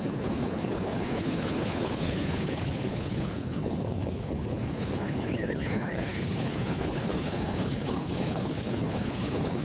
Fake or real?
fake